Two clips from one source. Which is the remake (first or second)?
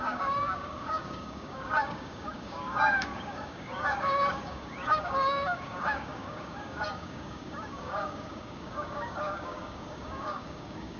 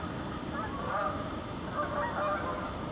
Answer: first